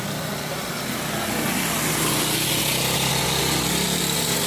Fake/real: real